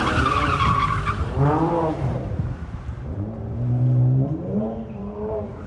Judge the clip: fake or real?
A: fake